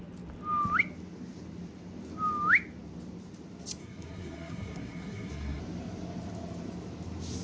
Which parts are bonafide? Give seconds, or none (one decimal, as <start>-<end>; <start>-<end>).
0.0-3.8; 5.6-7.4